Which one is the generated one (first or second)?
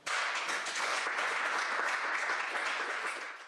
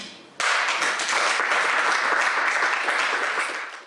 first